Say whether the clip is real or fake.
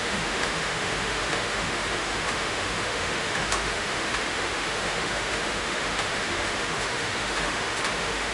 fake